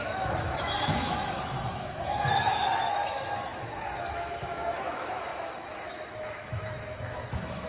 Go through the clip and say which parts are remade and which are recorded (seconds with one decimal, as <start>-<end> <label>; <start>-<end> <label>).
0.0-7.7 remade

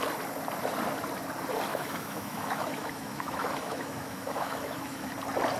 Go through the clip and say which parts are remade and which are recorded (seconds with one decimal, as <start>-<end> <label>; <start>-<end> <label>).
0.0-1.7 recorded; 1.7-5.1 remade; 5.1-5.6 recorded

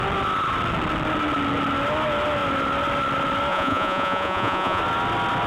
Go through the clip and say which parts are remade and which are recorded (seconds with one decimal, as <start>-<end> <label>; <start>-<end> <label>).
0.0-3.5 recorded; 3.5-4.8 remade; 4.8-5.5 recorded

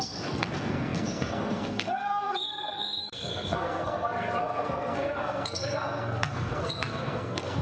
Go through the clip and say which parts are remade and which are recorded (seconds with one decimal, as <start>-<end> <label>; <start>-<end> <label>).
0.0-7.6 remade